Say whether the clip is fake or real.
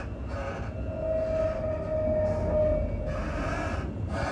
real